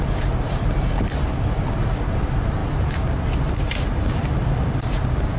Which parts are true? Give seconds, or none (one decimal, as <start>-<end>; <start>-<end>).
0.0-5.4